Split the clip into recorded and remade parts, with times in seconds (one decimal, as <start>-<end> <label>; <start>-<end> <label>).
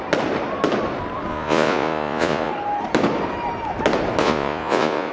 0.0-1.3 recorded; 1.3-2.5 remade; 2.5-4.2 recorded; 4.2-5.1 remade